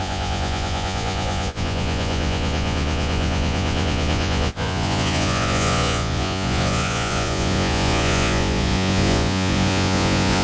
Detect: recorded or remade remade